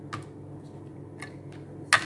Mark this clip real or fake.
real